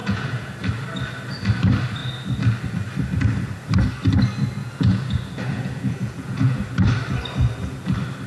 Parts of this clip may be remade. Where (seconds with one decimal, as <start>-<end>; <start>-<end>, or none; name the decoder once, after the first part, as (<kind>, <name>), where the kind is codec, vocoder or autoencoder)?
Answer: 0.0-0.5 (vocoder, Vocos); 4.6-6.6